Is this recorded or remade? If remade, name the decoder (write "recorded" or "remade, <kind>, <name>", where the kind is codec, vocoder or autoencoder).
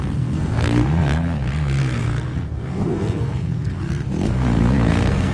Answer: remade, codec, SNAC